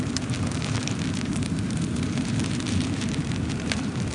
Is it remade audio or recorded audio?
remade